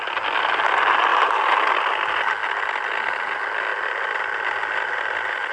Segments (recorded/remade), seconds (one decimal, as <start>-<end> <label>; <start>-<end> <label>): 0.0-5.5 recorded